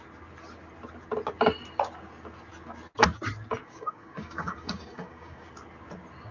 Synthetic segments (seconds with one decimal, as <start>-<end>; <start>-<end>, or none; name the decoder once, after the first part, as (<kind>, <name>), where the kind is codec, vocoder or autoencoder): 3.6-5.5 (codec, DAC)